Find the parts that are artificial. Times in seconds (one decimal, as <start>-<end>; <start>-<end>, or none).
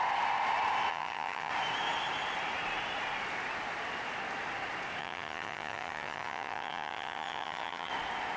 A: 0.9-1.5; 5.0-7.9